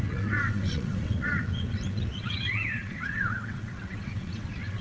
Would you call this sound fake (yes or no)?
yes